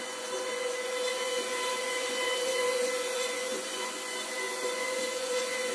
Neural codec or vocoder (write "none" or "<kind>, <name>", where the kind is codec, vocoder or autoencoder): vocoder, Vocos